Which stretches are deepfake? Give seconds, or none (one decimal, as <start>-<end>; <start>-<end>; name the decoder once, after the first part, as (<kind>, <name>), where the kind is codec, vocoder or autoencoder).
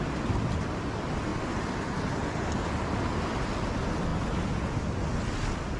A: none